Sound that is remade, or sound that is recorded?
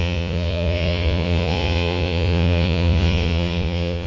remade